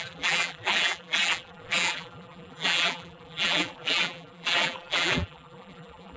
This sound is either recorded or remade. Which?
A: remade